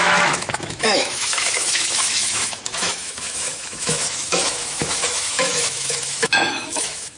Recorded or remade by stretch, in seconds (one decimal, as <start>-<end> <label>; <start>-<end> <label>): 0.0-7.2 remade